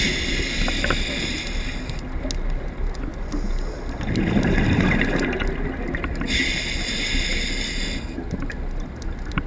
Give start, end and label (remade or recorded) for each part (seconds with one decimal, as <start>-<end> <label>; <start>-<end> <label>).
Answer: 0.0-9.5 recorded